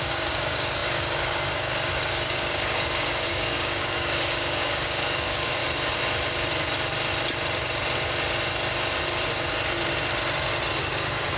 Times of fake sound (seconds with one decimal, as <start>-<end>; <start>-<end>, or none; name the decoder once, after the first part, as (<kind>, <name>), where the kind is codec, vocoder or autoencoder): 0.0-5.6 (codec, DAC); 10.8-11.4